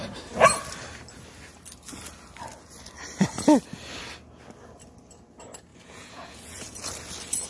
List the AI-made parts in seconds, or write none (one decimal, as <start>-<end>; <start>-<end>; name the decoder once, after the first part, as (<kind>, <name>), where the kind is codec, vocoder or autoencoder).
5.7-6.9 (vocoder, Vocos)